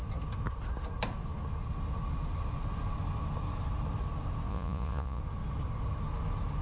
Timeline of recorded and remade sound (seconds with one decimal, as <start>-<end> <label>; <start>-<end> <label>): 0.0-4.5 recorded; 4.5-5.2 remade; 5.2-6.6 recorded